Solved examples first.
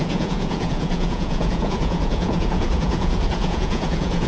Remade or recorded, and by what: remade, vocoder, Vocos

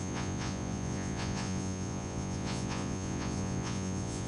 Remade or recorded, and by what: remade, vocoder, Vocos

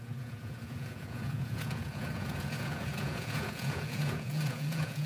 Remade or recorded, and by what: remade, vocoder, Vocos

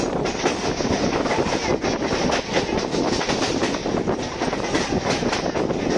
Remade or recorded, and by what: recorded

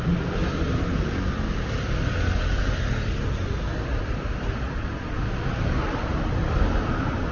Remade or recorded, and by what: recorded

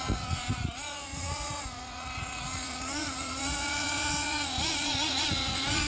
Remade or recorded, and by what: remade, vocoder, Vocos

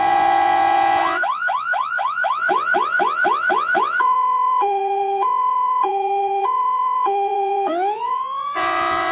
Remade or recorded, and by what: remade, vocoder, Vocos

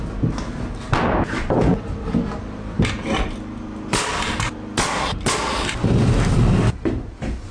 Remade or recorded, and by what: recorded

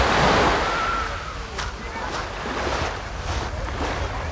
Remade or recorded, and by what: recorded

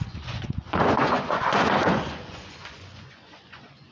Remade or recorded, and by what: remade, vocoder, Vocos